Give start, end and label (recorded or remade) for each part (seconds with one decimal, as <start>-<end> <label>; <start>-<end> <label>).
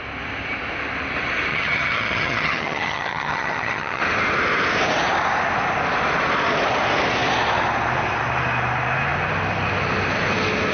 0.0-1.5 recorded; 1.5-4.0 remade; 4.0-10.7 recorded